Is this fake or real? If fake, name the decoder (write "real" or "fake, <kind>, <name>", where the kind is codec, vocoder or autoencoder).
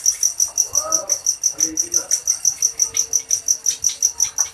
real